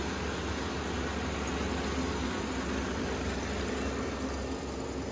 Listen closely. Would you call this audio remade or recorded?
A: recorded